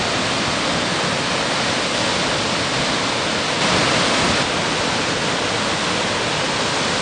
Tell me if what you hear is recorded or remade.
recorded